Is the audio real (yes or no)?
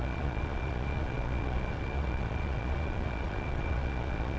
no